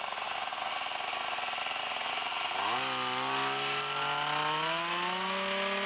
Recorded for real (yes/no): yes